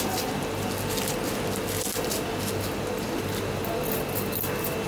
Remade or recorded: recorded